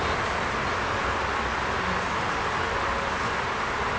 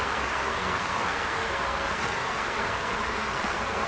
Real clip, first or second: first